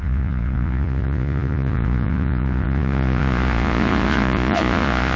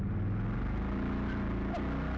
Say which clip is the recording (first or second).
second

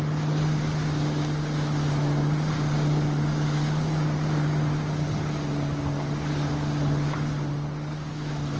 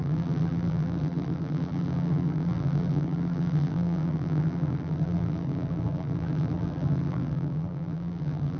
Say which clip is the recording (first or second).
first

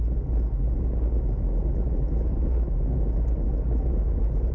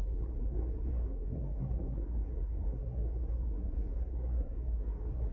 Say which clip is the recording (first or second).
first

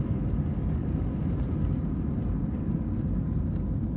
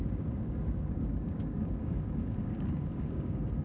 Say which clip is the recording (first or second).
first